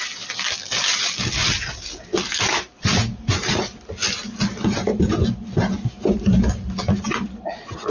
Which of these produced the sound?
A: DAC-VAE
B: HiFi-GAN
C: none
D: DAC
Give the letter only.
C